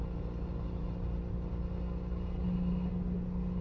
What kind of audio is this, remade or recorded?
recorded